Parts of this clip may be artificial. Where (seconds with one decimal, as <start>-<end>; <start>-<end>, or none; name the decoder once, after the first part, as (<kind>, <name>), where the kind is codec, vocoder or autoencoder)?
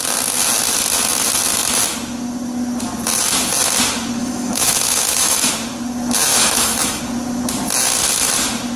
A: 4.2-5.5 (autoencoder, DAC-VAE); 6.3-7.0